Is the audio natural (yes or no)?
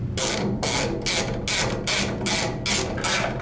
yes